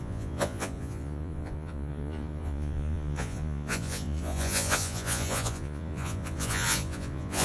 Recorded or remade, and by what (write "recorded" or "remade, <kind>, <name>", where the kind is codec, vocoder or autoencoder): remade, vocoder, Vocos